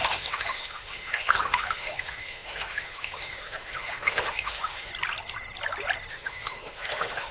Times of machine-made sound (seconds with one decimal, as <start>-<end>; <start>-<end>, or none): 0.0-4.9; 6.1-7.3